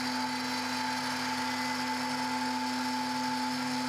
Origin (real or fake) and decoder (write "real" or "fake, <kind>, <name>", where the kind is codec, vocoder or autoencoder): real